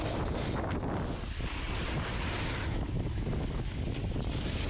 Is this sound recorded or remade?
recorded